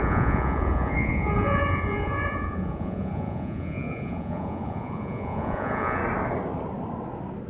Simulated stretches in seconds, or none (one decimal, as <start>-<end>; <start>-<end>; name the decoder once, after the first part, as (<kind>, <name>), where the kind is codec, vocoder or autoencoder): 0.0-6.0 (vocoder, Vocos)